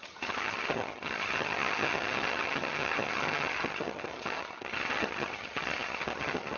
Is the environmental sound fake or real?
fake